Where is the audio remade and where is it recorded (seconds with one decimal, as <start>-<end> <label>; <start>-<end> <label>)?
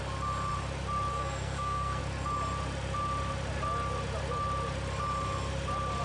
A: 0.0-1.1 recorded; 1.1-2.0 remade; 2.0-6.0 recorded